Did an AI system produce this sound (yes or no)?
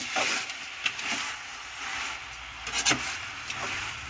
no